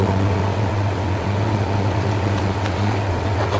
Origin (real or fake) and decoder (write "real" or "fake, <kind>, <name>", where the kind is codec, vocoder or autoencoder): fake, vocoder, WaveNeXt